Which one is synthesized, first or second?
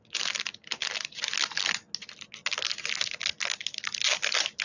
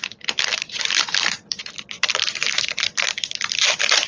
second